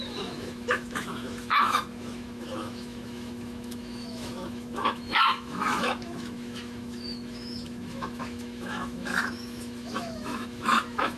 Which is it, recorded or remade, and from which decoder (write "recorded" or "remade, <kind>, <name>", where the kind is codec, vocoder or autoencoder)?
remade, autoencoder, DAC-VAE